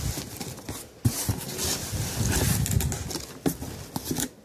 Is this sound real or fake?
real